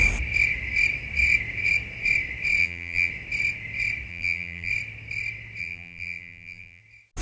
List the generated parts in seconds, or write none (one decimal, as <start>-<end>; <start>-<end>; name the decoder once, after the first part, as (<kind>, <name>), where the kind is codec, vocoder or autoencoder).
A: 2.6-3.1 (vocoder, BigVGAN v2); 4.1-4.7; 5.6-6.8